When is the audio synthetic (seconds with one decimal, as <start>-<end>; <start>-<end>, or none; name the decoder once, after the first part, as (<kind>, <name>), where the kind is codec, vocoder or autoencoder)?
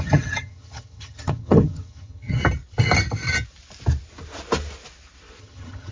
0.0-2.4 (vocoder, HiFi-GAN); 5.4-5.9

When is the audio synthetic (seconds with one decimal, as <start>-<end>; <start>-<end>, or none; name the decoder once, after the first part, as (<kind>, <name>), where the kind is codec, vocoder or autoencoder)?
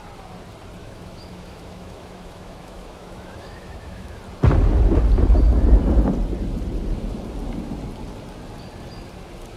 0.8-4.2 (autoencoder, DAC-VAE)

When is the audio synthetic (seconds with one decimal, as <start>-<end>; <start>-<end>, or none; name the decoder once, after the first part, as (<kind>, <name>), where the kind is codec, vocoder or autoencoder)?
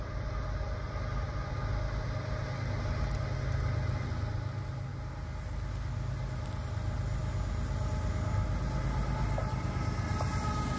none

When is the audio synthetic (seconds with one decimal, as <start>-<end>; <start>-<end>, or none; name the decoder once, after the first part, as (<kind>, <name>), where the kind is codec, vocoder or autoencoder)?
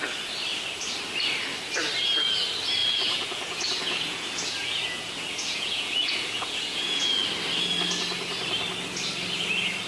2.8-7.1 (vocoder, Vocos)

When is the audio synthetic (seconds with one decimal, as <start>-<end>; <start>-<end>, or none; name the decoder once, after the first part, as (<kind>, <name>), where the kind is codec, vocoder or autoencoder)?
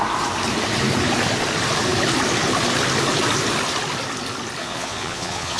4.6-5.6 (vocoder, Vocos)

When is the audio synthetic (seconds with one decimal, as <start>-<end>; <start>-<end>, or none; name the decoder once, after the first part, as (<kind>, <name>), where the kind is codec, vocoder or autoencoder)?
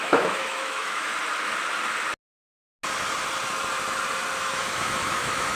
0.0-1.1 (autoencoder, DAC-VAE); 4.4-5.5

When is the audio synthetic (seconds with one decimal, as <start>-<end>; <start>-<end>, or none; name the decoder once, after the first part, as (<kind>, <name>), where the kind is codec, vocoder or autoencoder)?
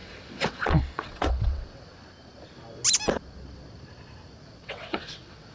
0.0-1.9 (vocoder, WaveNeXt); 4.6-5.5